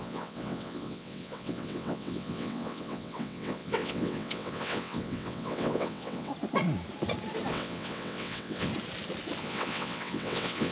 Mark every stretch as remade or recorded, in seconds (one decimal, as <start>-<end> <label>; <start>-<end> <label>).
0.0-6.3 remade; 6.3-7.5 recorded; 7.5-8.7 remade; 8.7-9.4 recorded; 9.4-10.7 remade